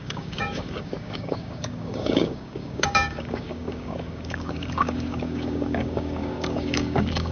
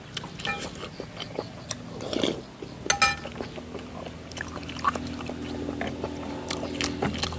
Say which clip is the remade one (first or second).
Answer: first